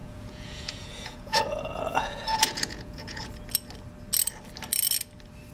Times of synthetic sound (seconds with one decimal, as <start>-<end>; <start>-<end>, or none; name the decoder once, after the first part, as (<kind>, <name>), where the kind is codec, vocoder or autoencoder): 0.0-3.3 (vocoder, Vocos)